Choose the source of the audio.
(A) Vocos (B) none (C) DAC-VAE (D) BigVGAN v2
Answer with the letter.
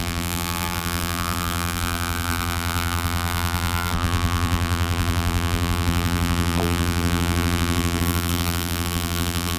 D